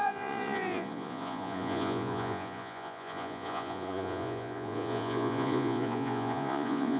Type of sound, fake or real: fake